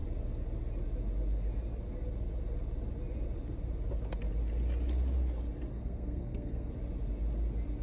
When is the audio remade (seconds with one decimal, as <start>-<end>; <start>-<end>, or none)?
5.7-6.7